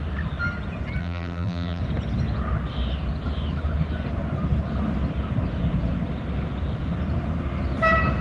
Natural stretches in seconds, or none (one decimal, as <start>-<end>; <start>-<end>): 0.0-1.0; 1.8-8.2